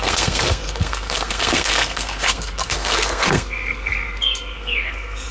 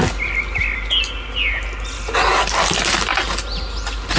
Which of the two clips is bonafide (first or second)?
second